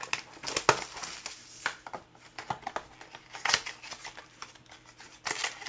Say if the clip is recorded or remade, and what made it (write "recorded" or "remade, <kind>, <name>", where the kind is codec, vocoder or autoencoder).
recorded